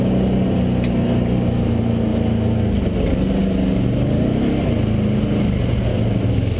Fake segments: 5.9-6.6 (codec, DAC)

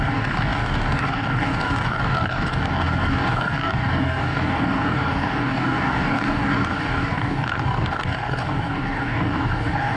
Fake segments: 0.0-10.0 (codec, DAC)

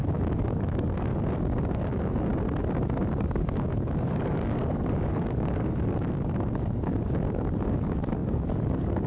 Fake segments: 0.0-1.1 (codec, DAC); 1.7-2.3; 3.2-9.1

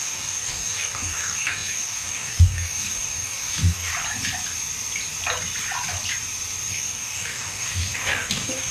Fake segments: 0.0-3.9 (codec, DAC); 6.7-8.7

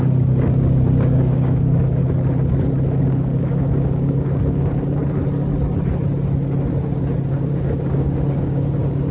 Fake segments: 0.0-2.0 (codec, DAC); 3.0-5.0; 7.3-9.1

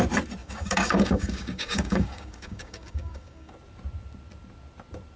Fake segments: 0.4-3.5 (codec, DAC)

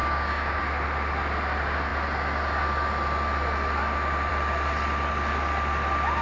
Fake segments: 0.0-0.6 (codec, DAC)

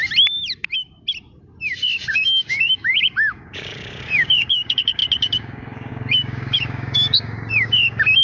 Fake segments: 2.1-8.2 (codec, DAC)